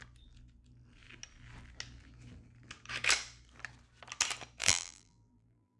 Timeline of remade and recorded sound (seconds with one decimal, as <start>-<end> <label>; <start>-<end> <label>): 0.0-4.6 recorded; 4.6-5.8 remade